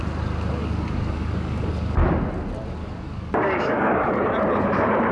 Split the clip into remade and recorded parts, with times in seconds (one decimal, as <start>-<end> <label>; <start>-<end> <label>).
0.0-0.6 recorded; 0.6-1.7 remade; 1.7-2.8 recorded; 2.8-4.1 remade; 4.1-5.1 recorded